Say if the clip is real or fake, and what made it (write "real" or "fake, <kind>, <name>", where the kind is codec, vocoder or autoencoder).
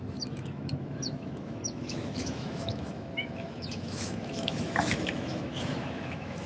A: fake, autoencoder, DAC-VAE